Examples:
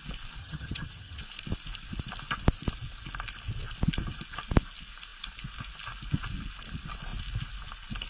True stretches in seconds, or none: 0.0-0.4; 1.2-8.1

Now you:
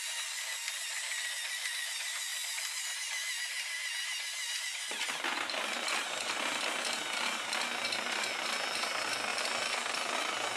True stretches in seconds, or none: 0.0-2.3; 2.8-9.3; 9.9-10.6

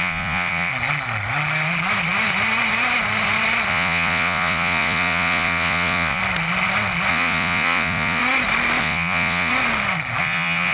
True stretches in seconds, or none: 0.7-3.7; 6.2-7.1; 8.2-8.8; 9.5-10.2